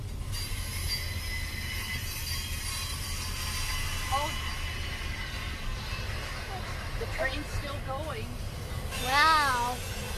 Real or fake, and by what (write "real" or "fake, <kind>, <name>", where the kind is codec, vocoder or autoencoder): real